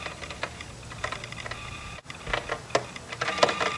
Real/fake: real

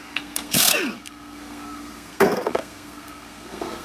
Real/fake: fake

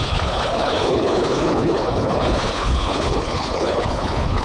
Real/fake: fake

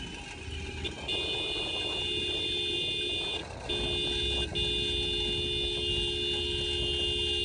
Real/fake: real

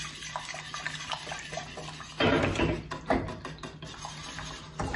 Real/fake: real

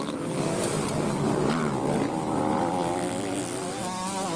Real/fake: real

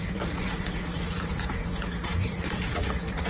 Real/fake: fake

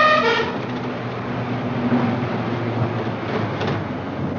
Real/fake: real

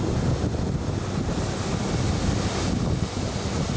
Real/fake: real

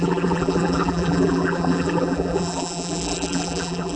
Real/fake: fake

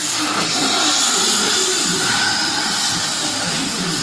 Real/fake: real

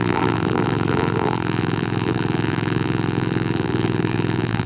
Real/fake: fake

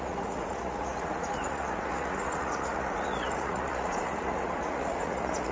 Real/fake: fake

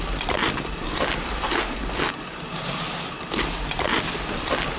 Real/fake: real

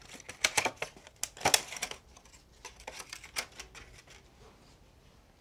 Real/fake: real